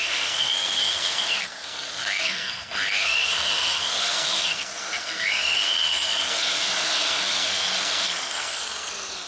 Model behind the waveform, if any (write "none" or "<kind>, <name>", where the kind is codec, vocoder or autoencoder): codec, SNAC